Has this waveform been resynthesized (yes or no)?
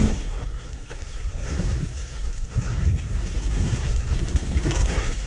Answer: yes